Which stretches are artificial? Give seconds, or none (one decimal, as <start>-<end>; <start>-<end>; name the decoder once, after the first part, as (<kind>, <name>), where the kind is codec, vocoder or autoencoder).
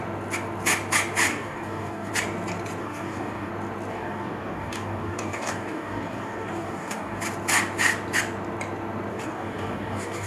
1.3-2.1 (codec, DAC); 2.8-3.5; 3.9-7.2; 9.1-10.3